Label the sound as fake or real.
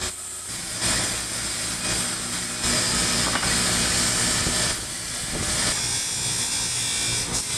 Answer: real